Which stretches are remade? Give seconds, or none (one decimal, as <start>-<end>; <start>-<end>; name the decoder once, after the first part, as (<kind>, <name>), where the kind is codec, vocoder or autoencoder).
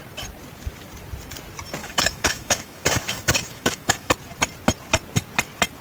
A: 1.8-4.1 (autoencoder, DAC-VAE)